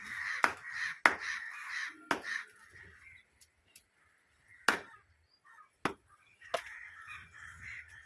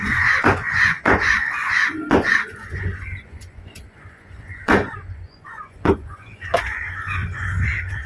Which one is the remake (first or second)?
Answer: second